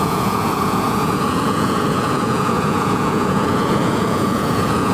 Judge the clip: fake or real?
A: fake